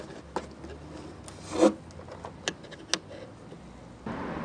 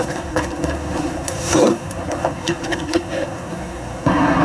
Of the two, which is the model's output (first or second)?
second